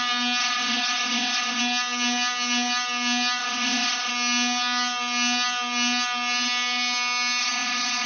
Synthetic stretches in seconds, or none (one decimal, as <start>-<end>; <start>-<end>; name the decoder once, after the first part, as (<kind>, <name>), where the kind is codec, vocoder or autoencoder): 0.4-1.6 (vocoder, WaveNeXt); 3.4-4.1; 7.4-8.1